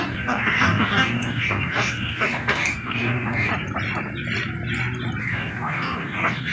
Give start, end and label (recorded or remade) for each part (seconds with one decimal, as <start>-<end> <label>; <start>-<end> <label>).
0.0-3.5 remade; 3.5-5.2 recorded; 5.2-6.5 remade